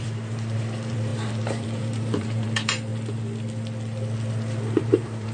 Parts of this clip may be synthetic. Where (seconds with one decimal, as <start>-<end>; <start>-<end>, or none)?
0.0-2.9; 4.8-5.3